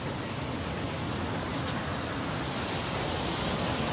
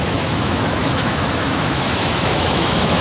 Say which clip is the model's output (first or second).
second